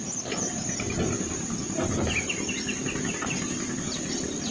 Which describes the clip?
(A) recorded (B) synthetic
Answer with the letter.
A